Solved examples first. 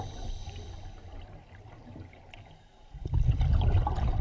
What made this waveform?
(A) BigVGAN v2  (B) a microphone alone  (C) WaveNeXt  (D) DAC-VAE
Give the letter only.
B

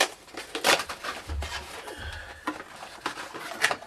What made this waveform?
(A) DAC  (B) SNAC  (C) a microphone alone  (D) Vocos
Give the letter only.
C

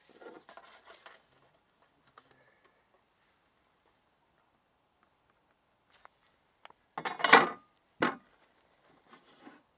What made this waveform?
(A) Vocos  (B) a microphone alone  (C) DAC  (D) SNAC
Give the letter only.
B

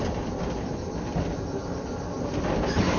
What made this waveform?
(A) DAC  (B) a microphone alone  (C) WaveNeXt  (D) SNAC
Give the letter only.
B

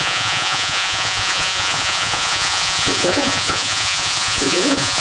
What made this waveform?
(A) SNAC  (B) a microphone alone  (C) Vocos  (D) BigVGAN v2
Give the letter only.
C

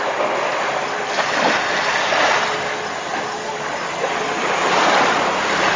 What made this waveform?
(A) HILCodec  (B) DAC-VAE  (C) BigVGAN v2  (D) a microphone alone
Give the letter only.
D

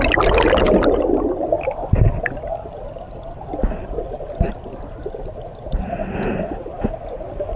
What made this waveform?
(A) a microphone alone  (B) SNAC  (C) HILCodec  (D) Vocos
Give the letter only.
A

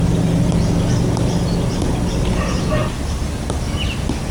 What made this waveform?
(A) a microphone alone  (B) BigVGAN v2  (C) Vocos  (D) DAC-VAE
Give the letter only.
A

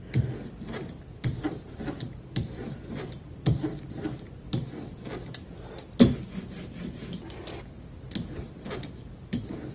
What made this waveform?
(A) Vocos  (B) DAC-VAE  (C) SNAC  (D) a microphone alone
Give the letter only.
D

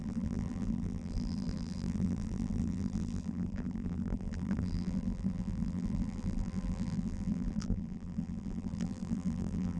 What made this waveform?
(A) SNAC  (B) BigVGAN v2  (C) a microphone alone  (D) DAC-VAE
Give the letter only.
B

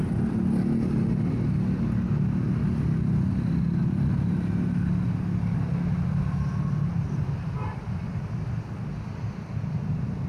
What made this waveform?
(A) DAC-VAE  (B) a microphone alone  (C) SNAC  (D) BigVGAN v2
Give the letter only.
B